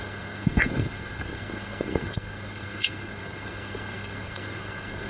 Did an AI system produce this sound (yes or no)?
yes